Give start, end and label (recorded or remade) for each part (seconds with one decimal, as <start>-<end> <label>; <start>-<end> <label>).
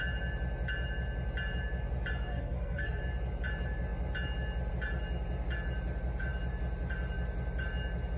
0.0-2.3 recorded; 2.3-3.0 remade; 3.0-8.2 recorded